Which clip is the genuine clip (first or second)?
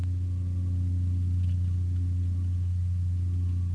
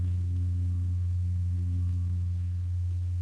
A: first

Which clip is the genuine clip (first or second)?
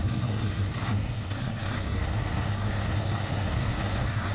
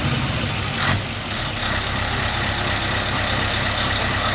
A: second